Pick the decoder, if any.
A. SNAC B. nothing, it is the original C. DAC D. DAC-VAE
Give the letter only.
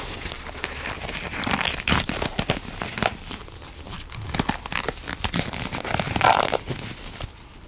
B